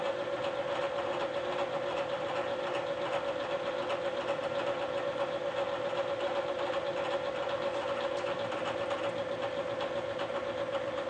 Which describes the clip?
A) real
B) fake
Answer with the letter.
A